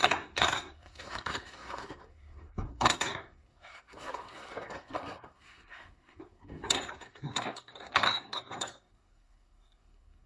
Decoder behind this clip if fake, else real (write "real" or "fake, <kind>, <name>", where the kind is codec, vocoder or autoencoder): fake, codec, SNAC